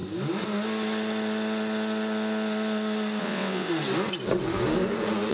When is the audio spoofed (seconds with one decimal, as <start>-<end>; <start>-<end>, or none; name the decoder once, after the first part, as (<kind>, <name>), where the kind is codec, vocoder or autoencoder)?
3.2-3.7 (vocoder, WaveNeXt)